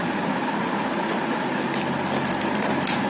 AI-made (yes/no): no